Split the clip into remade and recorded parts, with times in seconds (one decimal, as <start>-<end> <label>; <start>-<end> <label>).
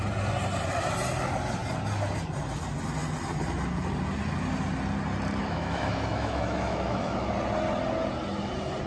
0.0-5.4 recorded; 5.4-7.3 remade; 7.3-8.9 recorded